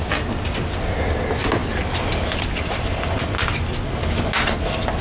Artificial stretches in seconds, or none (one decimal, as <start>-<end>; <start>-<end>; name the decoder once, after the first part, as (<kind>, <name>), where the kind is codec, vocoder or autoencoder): none